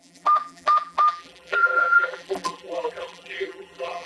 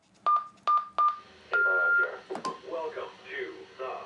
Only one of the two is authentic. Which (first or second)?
second